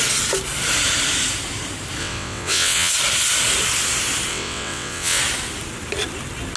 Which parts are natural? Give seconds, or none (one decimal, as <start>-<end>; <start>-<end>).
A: 0.0-2.0; 2.9-4.3; 5.2-6.6